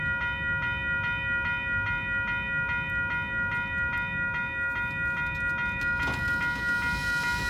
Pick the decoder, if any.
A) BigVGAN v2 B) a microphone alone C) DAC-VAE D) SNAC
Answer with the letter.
B